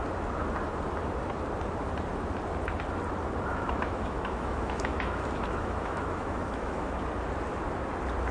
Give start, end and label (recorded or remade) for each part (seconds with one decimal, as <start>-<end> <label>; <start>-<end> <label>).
0.0-3.5 recorded; 3.5-7.0 remade; 7.0-8.3 recorded